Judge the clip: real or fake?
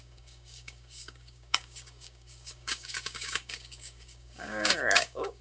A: fake